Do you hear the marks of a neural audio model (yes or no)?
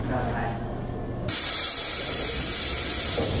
no